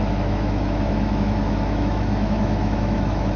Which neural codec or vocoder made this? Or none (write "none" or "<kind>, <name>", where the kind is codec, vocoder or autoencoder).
autoencoder, DAC-VAE